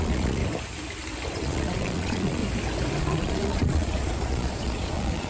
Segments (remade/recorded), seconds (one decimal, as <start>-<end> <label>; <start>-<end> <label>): 0.0-0.4 remade; 0.4-1.3 recorded; 1.3-2.4 remade; 2.4-3.0 recorded; 3.0-5.3 remade